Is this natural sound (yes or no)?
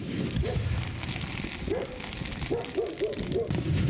yes